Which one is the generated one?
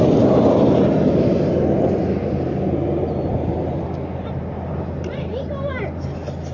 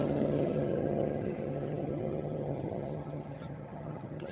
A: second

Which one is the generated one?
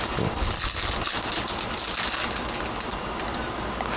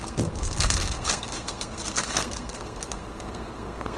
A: second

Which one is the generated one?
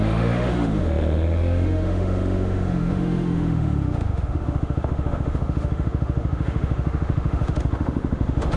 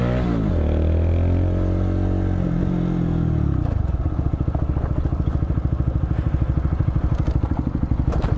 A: first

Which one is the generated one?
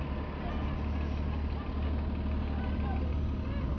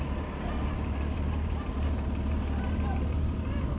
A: second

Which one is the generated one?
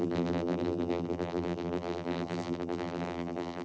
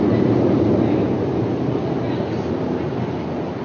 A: first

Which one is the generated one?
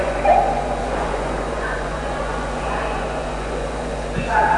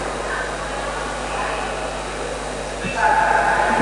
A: first